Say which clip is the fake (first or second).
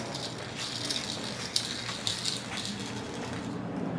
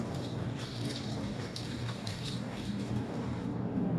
second